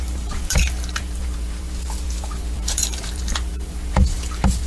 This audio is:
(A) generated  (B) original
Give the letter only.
A